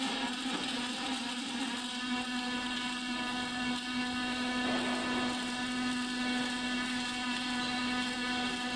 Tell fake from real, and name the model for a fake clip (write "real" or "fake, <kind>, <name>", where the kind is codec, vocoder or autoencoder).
real